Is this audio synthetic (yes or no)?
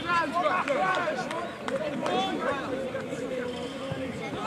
no